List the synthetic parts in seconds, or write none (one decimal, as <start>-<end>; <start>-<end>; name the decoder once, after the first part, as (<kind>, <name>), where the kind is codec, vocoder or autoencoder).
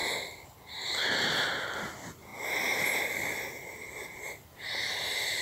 none